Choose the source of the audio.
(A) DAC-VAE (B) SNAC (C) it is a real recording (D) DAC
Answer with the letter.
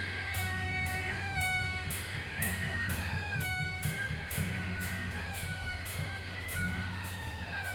A